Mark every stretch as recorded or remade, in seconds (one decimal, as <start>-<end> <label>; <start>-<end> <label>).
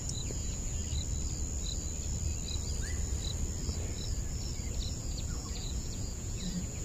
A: 0.0-0.8 remade; 0.8-4.9 recorded; 4.9-6.8 remade